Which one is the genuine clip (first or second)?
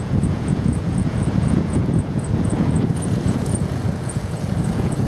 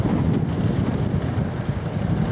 second